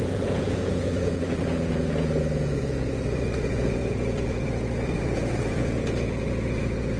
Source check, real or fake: fake